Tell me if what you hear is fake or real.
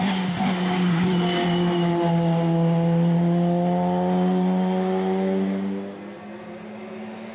real